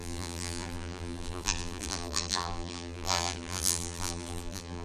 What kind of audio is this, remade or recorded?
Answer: remade